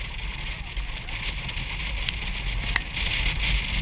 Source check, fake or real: real